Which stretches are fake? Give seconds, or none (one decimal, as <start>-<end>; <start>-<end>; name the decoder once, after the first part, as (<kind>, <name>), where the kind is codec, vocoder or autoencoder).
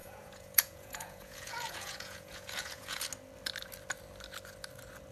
0.0-3.1 (vocoder, Vocos)